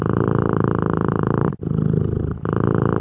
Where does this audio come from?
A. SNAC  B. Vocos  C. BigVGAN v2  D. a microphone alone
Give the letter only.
C